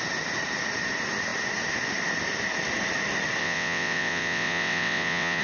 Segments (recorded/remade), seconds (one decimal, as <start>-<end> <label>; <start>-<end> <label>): 0.0-3.4 recorded; 3.4-5.4 remade